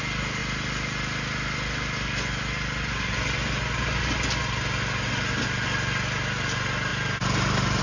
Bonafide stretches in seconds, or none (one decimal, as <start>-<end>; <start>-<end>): 0.0-7.8